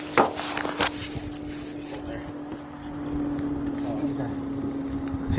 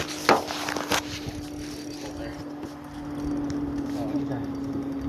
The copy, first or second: second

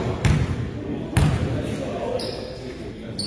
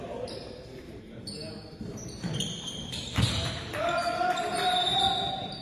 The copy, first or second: second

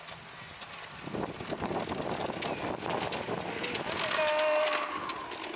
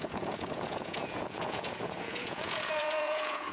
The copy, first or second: second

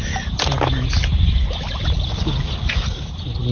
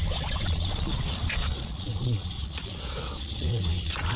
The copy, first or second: second